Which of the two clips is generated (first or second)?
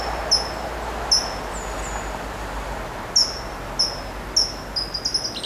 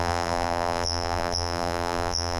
second